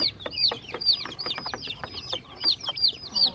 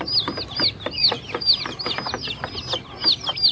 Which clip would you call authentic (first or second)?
second